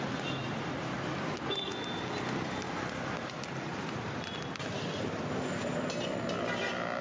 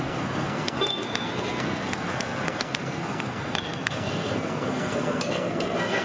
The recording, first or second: first